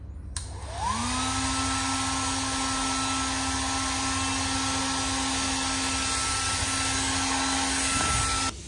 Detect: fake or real real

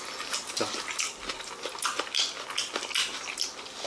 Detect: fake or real real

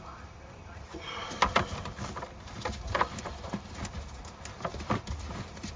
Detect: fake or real real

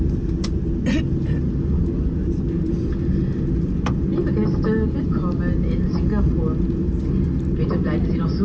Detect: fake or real real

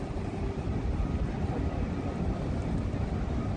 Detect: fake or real real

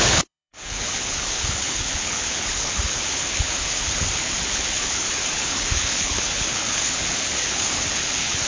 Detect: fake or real fake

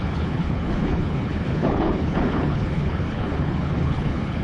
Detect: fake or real fake